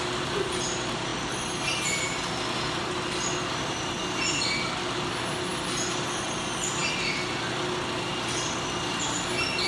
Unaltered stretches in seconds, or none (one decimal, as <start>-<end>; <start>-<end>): 0.0-9.7